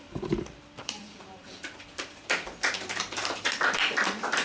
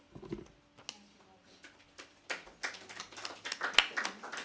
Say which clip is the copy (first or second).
first